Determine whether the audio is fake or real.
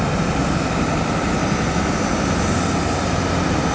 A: real